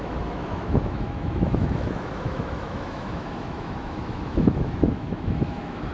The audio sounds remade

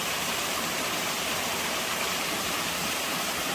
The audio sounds remade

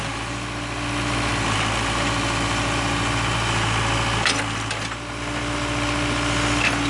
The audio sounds recorded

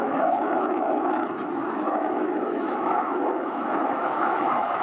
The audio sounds remade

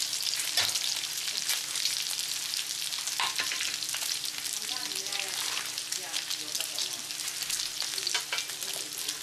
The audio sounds recorded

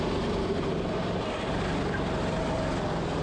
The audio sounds recorded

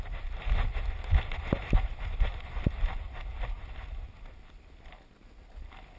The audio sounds recorded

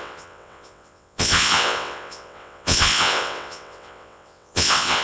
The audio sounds remade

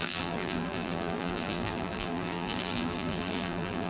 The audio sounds remade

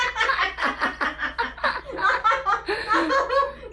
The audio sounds recorded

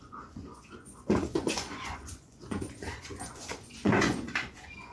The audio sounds remade